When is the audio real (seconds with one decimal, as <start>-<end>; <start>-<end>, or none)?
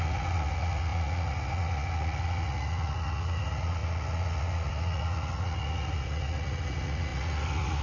none